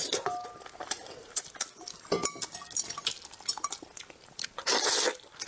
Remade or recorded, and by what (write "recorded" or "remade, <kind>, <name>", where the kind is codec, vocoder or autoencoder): recorded